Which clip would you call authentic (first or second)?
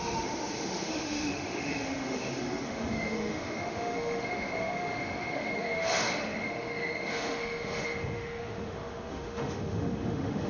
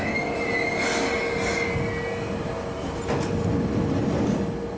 second